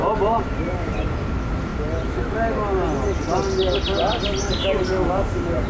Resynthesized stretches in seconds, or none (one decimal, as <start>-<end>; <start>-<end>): 0.0-1.7; 5.1-5.7